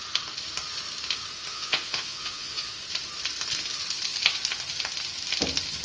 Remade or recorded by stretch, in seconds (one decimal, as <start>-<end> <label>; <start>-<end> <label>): 0.0-1.5 recorded; 1.5-2.7 remade; 2.7-5.8 recorded